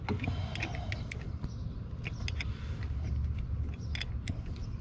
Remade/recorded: recorded